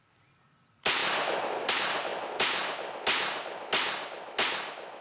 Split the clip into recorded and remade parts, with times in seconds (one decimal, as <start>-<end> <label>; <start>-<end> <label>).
0.0-5.0 recorded